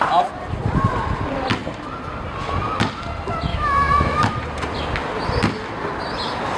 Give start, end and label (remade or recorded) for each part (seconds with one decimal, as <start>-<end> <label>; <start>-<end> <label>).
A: 0.0-3.5 recorded; 3.5-4.3 remade; 4.3-6.6 recorded

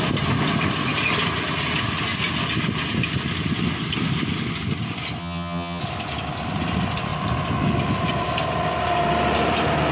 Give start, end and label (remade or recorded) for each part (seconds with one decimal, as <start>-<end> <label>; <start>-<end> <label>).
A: 0.0-5.2 recorded; 5.2-5.8 remade; 5.8-9.9 recorded